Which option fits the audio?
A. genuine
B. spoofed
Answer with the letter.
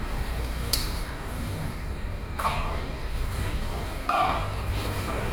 B